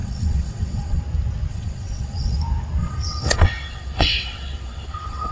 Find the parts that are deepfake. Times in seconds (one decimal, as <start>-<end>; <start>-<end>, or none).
0.0-1.0; 1.5-2.4; 2.8-5.3